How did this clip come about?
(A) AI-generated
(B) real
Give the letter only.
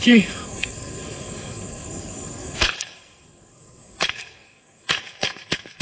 A